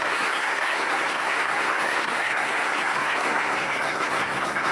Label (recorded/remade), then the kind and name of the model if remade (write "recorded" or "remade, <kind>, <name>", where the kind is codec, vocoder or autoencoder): remade, codec, SNAC